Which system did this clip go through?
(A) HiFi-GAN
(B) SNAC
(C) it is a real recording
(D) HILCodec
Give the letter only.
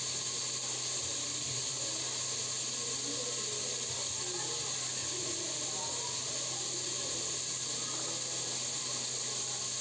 C